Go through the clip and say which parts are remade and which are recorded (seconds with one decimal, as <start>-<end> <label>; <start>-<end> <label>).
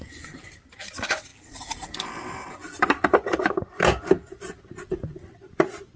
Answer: 0.0-6.0 recorded